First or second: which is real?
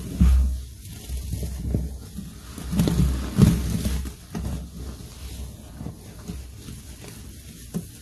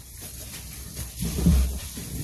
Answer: first